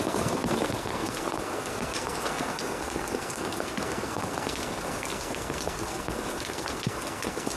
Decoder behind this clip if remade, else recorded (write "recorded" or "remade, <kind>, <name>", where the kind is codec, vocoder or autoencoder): remade, codec, SNAC